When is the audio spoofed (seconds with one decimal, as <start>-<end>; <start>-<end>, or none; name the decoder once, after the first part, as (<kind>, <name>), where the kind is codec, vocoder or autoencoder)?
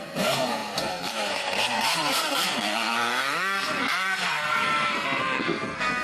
0.0-6.0 (codec, SNAC)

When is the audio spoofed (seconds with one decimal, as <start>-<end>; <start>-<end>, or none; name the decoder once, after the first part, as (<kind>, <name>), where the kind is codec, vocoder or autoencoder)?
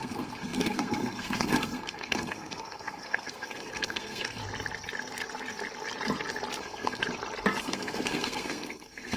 0.0-4.4 (codec, SNAC); 6.6-7.0; 7.6-9.2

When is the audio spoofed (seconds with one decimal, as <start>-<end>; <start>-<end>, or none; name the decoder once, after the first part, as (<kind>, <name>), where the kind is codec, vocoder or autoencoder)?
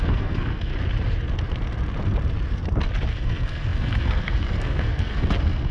0.0-0.7 (codec, SNAC); 3.1-5.7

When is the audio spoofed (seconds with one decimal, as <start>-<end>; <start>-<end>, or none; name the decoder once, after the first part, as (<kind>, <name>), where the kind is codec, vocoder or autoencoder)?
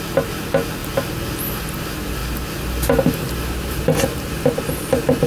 none